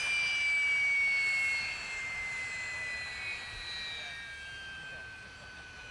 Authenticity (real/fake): real